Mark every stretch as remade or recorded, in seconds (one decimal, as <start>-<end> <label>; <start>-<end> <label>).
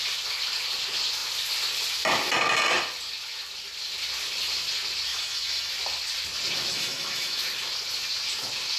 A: 0.0-5.1 recorded; 5.1-5.7 remade; 5.7-6.7 recorded; 6.7-7.4 remade; 7.4-8.8 recorded